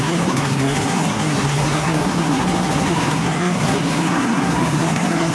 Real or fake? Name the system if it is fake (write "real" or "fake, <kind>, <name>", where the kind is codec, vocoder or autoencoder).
fake, codec, SNAC